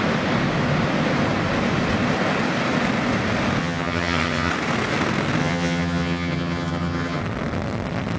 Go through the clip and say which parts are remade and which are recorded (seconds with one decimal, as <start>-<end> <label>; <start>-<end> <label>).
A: 0.0-3.6 recorded; 3.6-4.5 remade; 4.5-5.4 recorded; 5.4-7.2 remade; 7.2-8.2 recorded